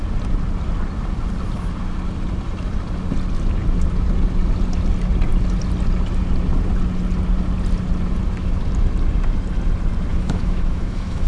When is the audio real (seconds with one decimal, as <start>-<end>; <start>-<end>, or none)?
0.0-10.1